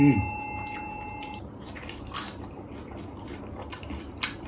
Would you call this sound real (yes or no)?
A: yes